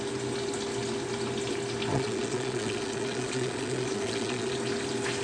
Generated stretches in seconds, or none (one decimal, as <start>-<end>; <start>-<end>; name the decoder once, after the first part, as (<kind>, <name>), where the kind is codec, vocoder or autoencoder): 1.9-4.5 (vocoder, Vocos)